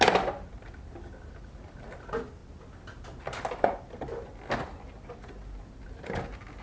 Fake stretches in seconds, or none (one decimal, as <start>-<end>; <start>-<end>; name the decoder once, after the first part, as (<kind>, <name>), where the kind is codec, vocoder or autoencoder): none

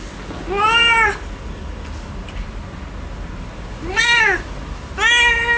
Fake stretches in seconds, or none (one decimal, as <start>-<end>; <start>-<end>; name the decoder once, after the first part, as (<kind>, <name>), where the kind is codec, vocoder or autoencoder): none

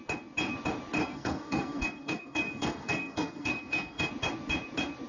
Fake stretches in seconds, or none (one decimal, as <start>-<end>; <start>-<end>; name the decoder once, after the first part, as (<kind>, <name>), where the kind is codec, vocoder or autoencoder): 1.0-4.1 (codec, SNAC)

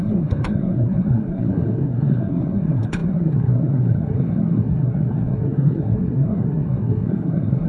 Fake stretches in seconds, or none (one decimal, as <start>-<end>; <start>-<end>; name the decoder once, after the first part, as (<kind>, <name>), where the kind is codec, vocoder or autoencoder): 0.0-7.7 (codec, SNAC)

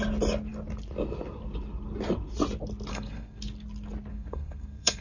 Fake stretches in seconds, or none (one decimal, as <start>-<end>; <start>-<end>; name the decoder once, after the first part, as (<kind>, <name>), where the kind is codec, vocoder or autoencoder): 2.9-3.4 (codec, SNAC); 4.1-5.0

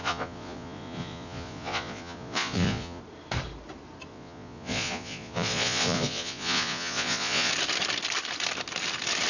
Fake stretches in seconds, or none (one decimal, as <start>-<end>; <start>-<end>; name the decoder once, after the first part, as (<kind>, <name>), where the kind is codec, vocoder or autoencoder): 0.0-3.0 (vocoder, Vocos); 4.1-7.5

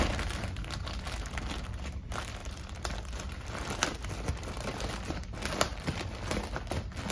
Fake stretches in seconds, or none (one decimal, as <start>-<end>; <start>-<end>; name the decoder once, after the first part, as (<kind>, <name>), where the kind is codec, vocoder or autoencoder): 2.4-7.1 (vocoder, BigVGAN v2)